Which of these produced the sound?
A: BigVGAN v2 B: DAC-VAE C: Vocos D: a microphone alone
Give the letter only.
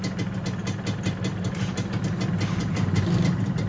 D